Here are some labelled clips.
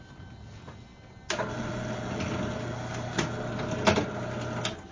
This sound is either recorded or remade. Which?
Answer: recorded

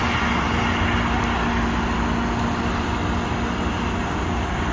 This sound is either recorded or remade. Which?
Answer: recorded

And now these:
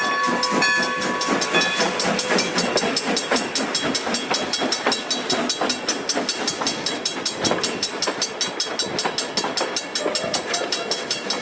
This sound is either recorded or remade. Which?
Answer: recorded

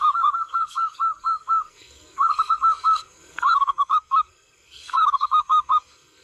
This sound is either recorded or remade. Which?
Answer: remade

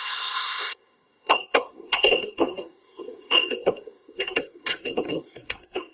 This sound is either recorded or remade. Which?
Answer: remade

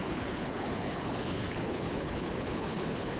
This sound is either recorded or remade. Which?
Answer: remade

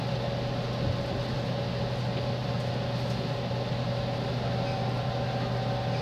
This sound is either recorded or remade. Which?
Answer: recorded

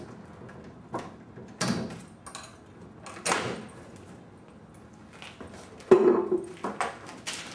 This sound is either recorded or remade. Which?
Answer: recorded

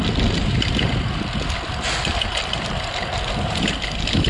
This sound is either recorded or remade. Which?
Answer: recorded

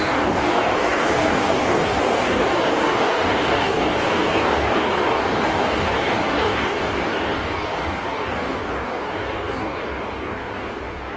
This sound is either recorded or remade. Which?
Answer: remade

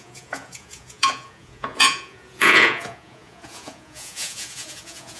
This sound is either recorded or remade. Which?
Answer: remade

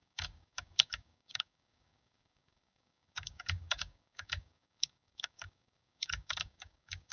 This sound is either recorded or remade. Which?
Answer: remade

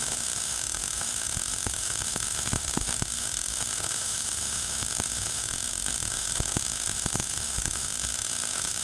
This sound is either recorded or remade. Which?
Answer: remade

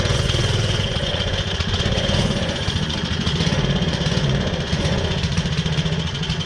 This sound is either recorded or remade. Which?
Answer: remade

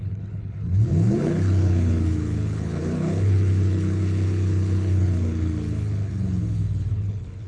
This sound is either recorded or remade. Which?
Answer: remade